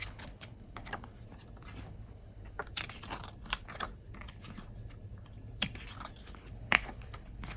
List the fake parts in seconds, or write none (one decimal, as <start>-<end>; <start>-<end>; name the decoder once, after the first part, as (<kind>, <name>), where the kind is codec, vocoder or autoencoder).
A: 0.0-1.1 (codec, HILCodec); 1.8-2.6; 6.2-7.6